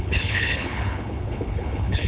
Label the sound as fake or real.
fake